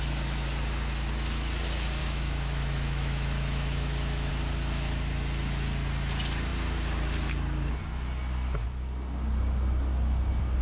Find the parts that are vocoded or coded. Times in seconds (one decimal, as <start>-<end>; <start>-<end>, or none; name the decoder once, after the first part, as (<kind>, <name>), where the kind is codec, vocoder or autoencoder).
2.0-4.3 (autoencoder, DAC-VAE)